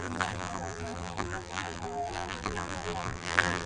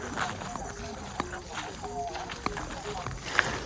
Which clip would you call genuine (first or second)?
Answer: second